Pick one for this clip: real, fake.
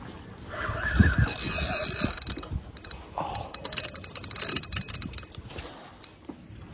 real